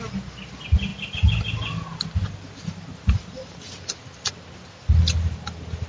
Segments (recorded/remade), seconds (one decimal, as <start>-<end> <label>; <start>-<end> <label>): 0.0-5.9 recorded

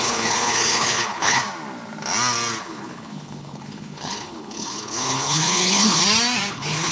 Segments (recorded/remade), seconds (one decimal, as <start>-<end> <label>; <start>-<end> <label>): 0.0-1.4 remade; 1.4-2.6 recorded; 2.6-6.0 remade; 6.0-6.5 recorded; 6.5-6.9 remade

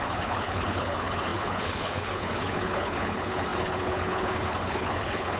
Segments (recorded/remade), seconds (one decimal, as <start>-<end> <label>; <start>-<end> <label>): 0.0-5.4 remade